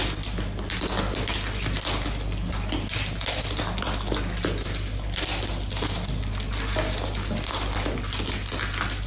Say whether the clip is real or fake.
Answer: real